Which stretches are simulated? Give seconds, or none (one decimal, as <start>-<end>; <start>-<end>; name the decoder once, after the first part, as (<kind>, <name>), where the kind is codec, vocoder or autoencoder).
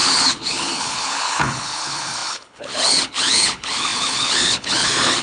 0.0-5.2 (codec, HILCodec)